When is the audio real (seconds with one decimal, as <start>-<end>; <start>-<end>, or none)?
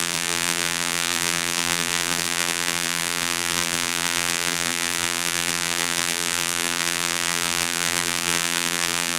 none